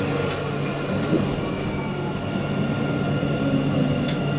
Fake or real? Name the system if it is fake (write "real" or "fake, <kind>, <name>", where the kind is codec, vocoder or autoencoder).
real